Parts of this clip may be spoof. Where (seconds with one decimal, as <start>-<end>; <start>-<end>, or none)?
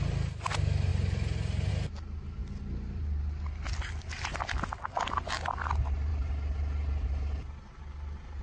none